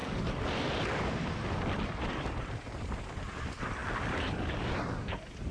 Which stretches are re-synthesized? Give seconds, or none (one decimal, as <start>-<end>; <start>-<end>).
none